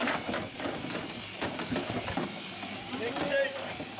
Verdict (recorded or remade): recorded